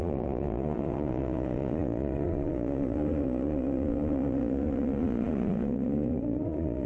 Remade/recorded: remade